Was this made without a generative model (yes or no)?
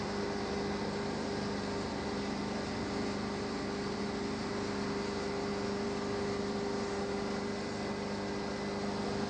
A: yes